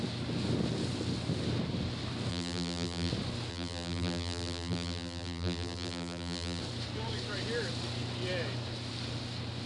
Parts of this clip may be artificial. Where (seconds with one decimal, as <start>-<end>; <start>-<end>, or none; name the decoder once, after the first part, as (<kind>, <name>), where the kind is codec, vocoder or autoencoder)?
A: 2.3-3.1 (vocoder, BigVGAN v2); 3.5-6.6

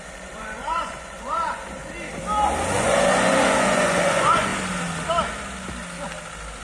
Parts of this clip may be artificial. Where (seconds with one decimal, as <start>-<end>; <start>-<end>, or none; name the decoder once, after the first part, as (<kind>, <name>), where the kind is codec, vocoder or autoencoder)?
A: 0.0-1.8 (vocoder, Vocos); 2.7-4.5

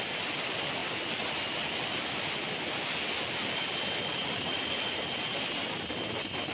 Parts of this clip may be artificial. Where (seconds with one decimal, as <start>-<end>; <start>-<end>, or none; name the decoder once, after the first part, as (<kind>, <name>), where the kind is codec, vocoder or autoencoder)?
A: none